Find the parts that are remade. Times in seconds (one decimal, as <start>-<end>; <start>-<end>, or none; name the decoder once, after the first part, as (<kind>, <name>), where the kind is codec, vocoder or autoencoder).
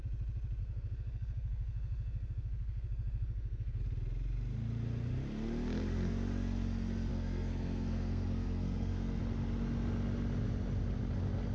0.6-3.8 (codec, SNAC); 7.1-9.2